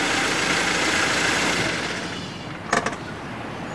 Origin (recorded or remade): recorded